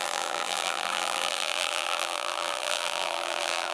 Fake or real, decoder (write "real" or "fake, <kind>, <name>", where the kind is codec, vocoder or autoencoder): fake, vocoder, BigVGAN v2